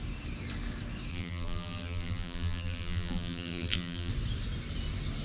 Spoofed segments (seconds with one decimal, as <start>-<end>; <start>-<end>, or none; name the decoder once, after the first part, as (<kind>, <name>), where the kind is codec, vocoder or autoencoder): 1.1-4.1 (vocoder, BigVGAN v2)